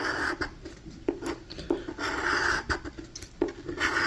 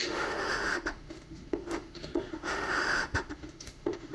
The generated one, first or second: second